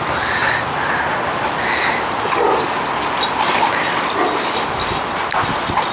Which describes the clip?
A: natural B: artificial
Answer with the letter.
A